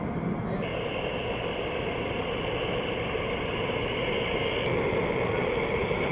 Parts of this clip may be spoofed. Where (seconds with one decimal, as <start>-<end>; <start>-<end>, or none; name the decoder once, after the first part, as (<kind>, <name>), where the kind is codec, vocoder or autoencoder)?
0.0-0.7 (vocoder, BigVGAN v2); 4.4-6.1